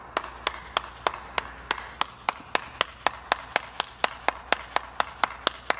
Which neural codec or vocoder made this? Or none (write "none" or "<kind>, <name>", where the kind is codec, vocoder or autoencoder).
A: none